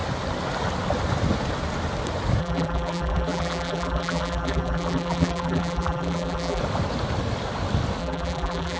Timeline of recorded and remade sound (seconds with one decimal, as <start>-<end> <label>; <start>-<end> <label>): 0.0-2.4 recorded; 2.4-6.6 remade; 6.6-8.0 recorded; 8.0-8.8 remade